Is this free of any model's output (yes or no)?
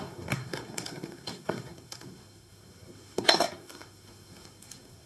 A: no